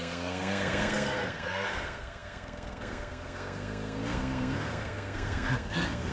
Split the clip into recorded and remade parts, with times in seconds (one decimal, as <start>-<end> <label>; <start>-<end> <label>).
0.0-6.1 remade